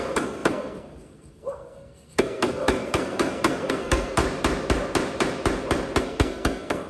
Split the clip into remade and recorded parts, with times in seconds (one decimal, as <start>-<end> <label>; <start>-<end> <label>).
0.0-4.2 remade; 4.2-6.0 recorded; 6.0-6.9 remade